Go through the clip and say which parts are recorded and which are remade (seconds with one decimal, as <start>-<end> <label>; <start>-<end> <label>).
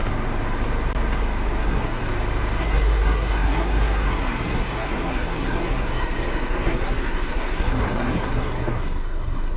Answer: 0.0-1.6 recorded; 1.6-2.0 remade; 2.0-2.6 recorded; 2.6-9.6 remade